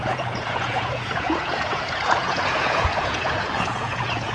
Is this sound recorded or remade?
remade